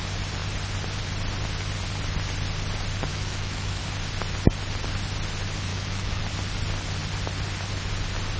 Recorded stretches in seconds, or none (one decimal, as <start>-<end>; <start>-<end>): 0.0-3.1; 3.8-5.7; 6.2-8.4